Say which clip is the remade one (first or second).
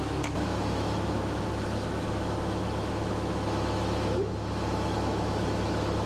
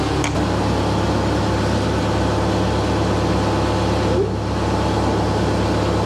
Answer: first